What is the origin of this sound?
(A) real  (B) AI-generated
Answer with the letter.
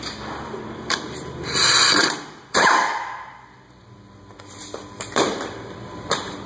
B